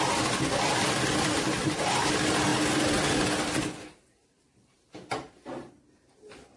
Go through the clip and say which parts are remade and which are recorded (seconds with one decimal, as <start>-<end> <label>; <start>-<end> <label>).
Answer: 0.0-6.6 recorded